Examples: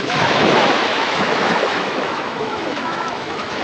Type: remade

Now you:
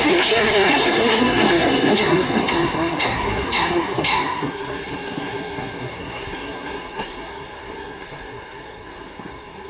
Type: remade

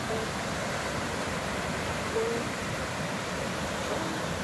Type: recorded